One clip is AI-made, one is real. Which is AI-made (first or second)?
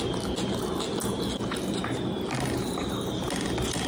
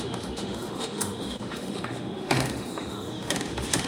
second